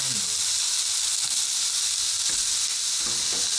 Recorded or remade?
recorded